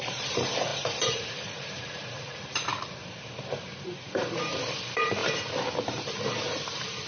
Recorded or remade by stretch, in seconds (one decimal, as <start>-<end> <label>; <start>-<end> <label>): 0.0-5.2 remade; 5.2-5.8 recorded; 5.8-7.1 remade